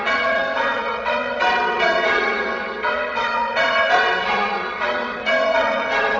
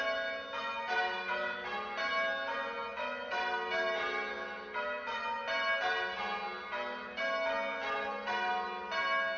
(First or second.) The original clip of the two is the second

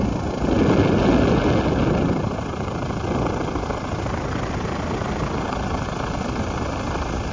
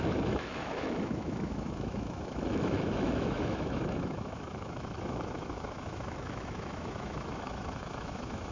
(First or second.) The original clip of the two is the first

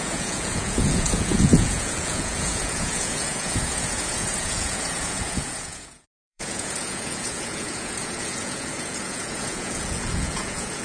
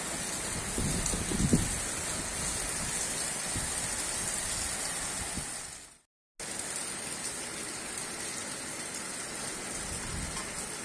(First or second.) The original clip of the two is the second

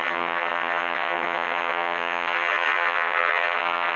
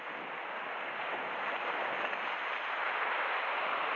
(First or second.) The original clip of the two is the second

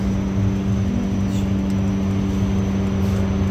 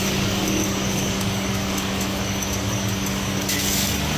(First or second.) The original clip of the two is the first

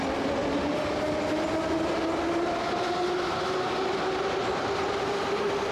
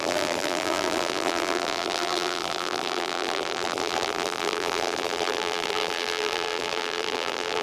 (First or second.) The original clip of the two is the first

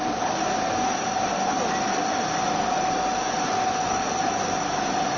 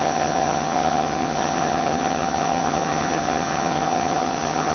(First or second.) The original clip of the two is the first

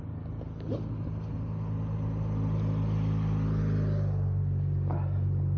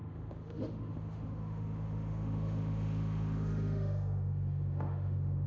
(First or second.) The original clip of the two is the first